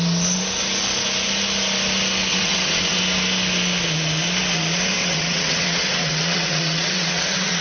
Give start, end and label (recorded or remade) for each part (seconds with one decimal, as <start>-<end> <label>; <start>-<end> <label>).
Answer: 0.0-2.3 recorded; 2.3-3.0 remade; 3.0-5.0 recorded; 5.0-7.6 remade